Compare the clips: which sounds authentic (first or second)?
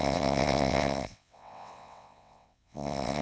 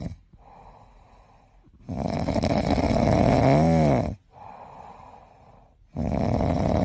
second